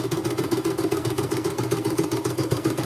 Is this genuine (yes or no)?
no